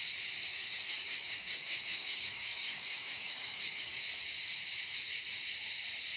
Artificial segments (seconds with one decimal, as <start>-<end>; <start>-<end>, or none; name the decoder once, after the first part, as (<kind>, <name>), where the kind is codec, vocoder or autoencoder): 0.5-4.0 (codec, DAC)